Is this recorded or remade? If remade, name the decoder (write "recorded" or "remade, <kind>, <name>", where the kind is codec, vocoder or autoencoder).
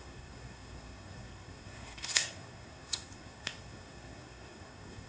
remade, codec, SNAC